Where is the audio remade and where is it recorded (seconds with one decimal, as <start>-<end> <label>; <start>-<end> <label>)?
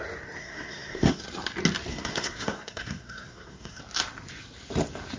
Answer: 0.0-0.4 recorded; 0.4-1.2 remade; 1.2-1.9 recorded; 1.9-3.8 remade; 3.8-5.2 recorded